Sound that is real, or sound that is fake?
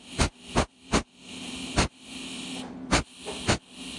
real